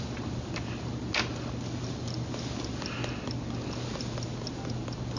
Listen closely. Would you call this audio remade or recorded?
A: recorded